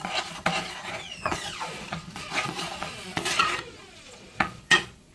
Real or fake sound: fake